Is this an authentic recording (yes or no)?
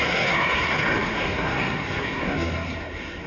no